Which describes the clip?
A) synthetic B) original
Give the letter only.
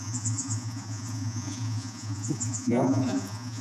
A